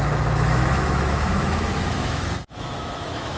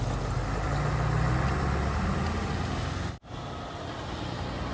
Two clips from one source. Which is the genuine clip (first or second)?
second